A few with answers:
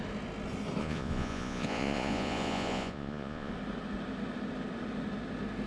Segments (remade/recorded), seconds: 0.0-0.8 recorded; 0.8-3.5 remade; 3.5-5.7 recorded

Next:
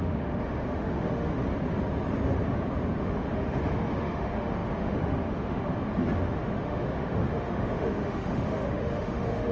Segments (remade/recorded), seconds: 0.0-1.3 remade; 1.3-3.0 recorded; 3.0-5.7 remade; 5.7-6.2 recorded; 6.2-9.5 remade

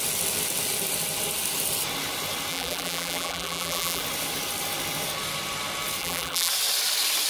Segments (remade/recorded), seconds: 0.0-2.5 recorded; 2.5-4.0 remade; 4.0-6.0 recorded; 6.0-6.5 remade; 6.5-7.3 recorded

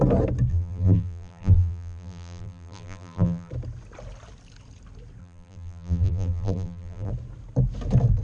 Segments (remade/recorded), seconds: 0.0-0.5 recorded; 0.5-3.5 remade; 3.5-5.2 recorded; 5.2-7.1 remade; 7.1-8.2 recorded

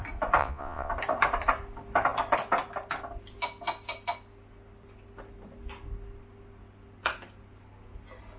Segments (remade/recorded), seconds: 0.0-0.4 recorded; 0.4-0.9 remade; 0.9-8.4 recorded

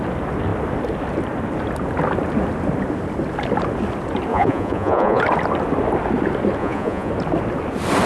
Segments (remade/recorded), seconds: 0.0-4.3 recorded; 4.3-5.2 remade; 5.2-6.6 recorded; 6.6-7.1 remade; 7.1-8.1 recorded